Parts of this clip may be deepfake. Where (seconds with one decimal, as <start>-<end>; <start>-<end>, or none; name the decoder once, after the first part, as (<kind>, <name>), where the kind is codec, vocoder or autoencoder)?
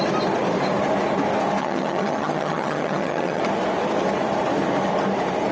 1.6-3.4 (vocoder, HiFi-GAN)